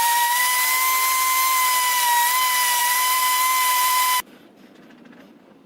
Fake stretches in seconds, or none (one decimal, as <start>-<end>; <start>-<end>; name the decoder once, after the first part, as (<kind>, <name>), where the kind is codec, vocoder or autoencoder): 0.0-0.4 (vocoder, BigVGAN v2); 2.8-3.2; 3.7-5.7